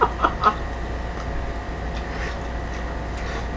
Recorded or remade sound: recorded